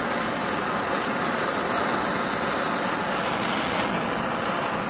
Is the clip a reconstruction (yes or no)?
no